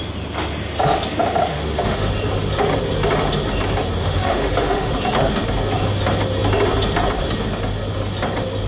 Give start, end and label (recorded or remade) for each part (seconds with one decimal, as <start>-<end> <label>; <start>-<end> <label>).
0.0-1.5 recorded; 1.5-2.1 remade; 2.1-4.0 recorded; 4.0-4.9 remade; 4.9-8.7 recorded